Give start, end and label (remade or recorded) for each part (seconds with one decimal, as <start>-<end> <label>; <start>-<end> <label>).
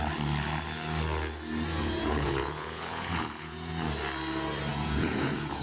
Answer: 0.0-1.7 recorded; 1.7-3.7 remade; 3.7-4.7 recorded; 4.7-5.6 remade